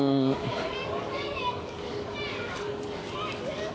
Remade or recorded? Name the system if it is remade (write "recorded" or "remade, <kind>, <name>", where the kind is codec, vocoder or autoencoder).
remade, codec, DAC